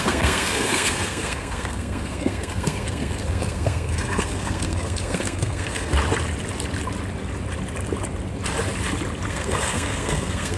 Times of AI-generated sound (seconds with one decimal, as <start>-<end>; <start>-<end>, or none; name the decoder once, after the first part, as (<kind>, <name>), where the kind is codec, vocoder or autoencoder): 0.0-5.9 (codec, SNAC); 9.3-10.6